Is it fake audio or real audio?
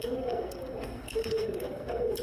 fake